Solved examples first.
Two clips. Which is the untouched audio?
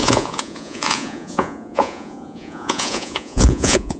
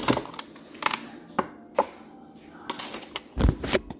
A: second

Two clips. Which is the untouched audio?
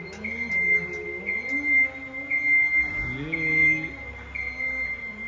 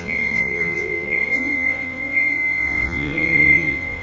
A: first